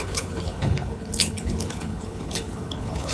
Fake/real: fake